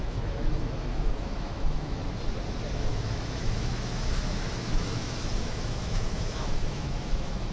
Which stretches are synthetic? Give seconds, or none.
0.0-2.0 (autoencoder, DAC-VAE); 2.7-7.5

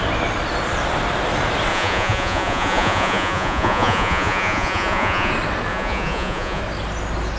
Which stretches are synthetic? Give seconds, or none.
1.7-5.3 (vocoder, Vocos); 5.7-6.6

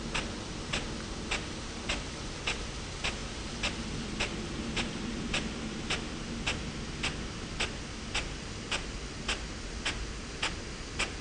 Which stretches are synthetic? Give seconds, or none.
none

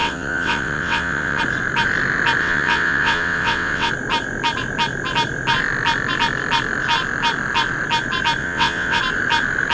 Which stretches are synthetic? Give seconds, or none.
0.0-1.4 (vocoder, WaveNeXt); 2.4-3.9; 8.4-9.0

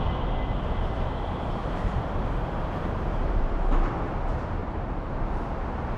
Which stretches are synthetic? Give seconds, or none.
1.6-3.6 (vocoder, BigVGAN v2); 4.6-5.2

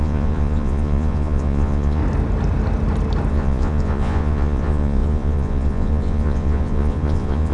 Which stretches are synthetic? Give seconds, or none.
0.0-2.0 (vocoder, Vocos); 3.3-7.5

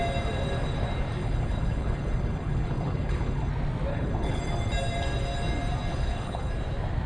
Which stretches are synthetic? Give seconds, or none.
1.2-3.5 (codec, HILCodec); 3.9-4.4; 5.9-6.5